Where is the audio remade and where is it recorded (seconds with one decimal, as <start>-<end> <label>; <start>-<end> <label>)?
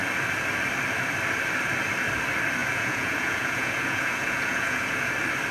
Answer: 0.0-2.6 recorded; 2.6-5.1 remade; 5.1-5.5 recorded